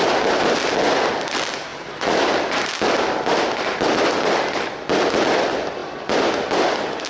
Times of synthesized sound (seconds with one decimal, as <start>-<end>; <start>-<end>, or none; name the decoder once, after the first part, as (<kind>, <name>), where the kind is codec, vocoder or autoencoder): 1.7-2.7 (vocoder, BigVGAN v2); 5.8-6.5